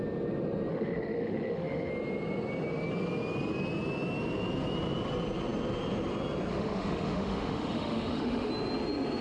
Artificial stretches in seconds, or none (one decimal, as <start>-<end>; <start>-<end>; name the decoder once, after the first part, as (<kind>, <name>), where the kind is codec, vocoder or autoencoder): 0.7-1.9 (autoencoder, DAC-VAE); 6.5-8.5